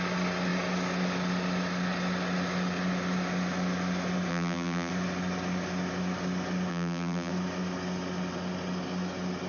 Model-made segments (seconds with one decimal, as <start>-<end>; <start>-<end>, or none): 4.3-4.9; 6.7-7.3